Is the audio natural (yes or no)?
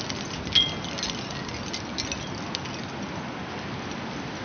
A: yes